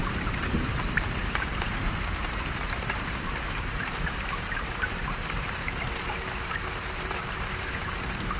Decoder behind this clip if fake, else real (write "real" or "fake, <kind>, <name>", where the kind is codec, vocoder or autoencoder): fake, vocoder, BigVGAN v2